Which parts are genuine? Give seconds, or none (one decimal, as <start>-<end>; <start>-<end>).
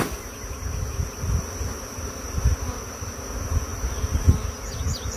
0.0-5.2